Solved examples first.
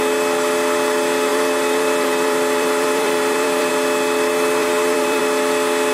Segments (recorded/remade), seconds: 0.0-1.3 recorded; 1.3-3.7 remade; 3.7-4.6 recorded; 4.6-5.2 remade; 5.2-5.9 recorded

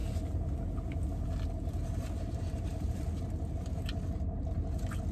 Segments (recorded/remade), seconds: 0.0-5.1 recorded

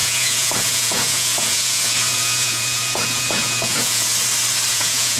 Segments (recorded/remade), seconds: 0.0-4.1 remade; 4.1-4.7 recorded; 4.7-5.2 remade

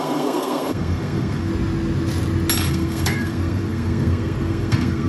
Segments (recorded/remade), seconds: 0.0-1.5 remade; 1.5-2.7 recorded; 2.7-5.1 remade

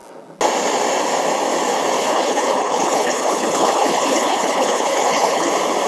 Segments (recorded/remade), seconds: 0.0-2.0 recorded; 2.0-5.5 remade; 5.5-5.9 recorded

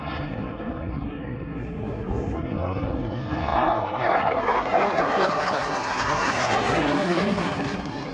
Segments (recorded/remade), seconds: 0.0-8.1 remade